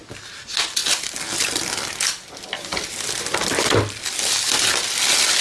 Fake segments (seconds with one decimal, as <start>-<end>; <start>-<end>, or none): none